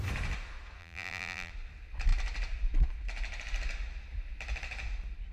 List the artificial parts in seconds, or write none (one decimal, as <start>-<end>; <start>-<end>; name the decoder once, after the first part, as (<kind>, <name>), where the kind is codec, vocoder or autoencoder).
0.8-1.5 (vocoder, BigVGAN v2)